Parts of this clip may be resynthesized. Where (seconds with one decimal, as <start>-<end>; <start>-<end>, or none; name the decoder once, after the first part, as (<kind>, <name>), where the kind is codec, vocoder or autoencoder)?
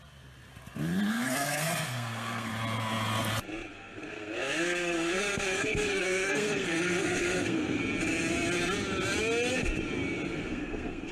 1.1-2.5 (codec, SNAC); 3.7-7.8; 10.3-11.1